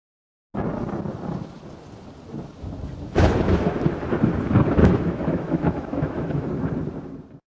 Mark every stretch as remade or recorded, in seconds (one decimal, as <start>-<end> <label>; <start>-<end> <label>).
0.0-4.8 recorded; 4.8-6.5 remade; 6.5-7.5 recorded